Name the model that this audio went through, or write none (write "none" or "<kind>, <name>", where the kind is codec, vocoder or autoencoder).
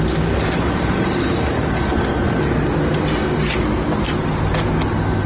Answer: none